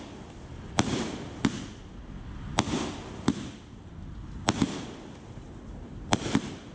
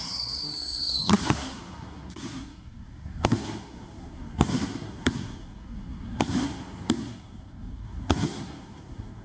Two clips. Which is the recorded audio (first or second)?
first